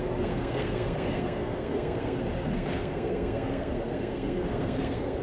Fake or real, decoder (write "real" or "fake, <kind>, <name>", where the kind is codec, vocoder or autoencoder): fake, codec, SNAC